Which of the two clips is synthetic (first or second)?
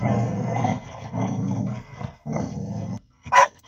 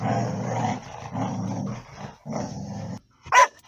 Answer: first